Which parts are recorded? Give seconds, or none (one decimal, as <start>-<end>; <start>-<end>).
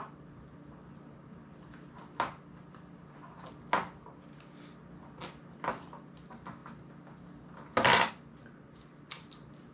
0.0-9.7